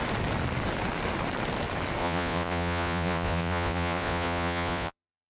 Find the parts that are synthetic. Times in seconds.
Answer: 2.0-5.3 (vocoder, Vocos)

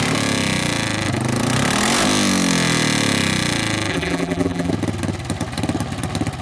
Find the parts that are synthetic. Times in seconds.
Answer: 3.9-4.7 (vocoder, BigVGAN v2)

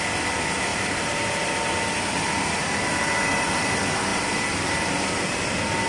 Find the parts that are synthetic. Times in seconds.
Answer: 0.7-1.3 (vocoder, BigVGAN v2)

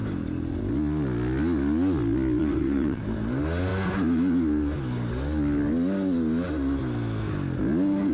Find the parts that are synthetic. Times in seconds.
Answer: 2.4-3.0 (vocoder, WaveNeXt)

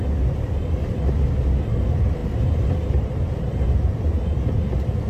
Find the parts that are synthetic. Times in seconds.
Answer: none

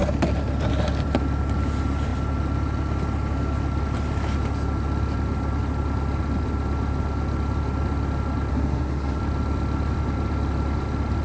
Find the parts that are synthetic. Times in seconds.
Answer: 8.5-9.2 (codec, SNAC)

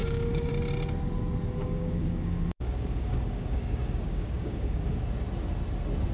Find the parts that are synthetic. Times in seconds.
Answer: 0.0-0.5 (codec, DAC); 1.6-5.0

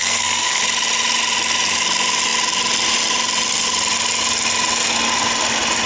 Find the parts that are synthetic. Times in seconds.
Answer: 0.0-0.6 (codec, SNAC)